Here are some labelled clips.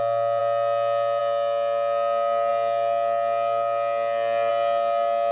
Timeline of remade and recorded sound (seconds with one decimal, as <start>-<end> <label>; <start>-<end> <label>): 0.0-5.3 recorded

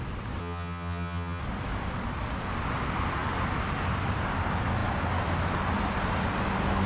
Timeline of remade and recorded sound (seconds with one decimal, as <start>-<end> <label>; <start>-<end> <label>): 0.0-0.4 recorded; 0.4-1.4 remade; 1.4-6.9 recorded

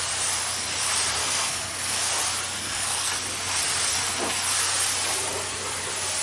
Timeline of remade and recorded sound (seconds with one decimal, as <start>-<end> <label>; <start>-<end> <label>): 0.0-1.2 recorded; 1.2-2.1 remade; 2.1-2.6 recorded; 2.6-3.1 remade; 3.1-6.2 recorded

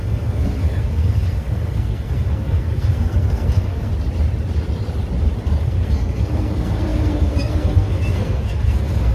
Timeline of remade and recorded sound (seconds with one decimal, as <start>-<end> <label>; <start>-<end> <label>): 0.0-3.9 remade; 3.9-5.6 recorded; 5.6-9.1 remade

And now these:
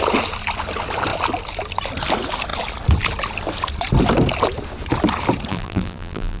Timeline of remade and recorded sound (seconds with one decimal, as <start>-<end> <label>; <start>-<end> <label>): 0.0-5.5 recorded; 5.5-6.4 remade

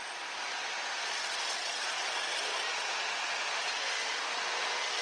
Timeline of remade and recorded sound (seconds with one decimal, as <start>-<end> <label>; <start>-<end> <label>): 0.0-5.0 recorded

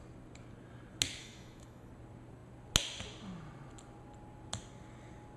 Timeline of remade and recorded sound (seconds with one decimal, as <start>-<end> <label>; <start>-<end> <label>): 0.0-1.2 recorded; 1.2-1.9 remade; 1.9-5.4 recorded

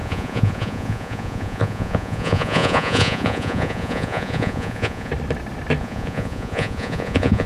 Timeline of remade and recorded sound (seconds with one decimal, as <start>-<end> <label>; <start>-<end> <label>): 0.0-5.1 remade; 5.1-5.8 recorded; 5.8-7.5 remade